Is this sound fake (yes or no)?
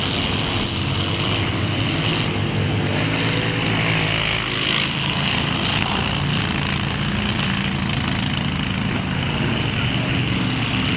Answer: no